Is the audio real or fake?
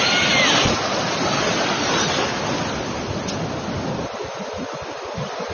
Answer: real